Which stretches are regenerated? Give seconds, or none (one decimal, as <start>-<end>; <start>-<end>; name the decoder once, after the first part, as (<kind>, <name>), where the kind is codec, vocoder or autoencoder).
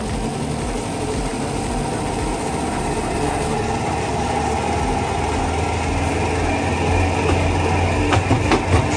none